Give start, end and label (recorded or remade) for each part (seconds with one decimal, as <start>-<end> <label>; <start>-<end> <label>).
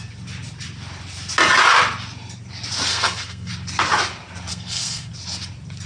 0.0-2.9 recorded; 2.9-3.5 remade; 3.5-4.5 recorded; 4.5-5.1 remade; 5.1-5.9 recorded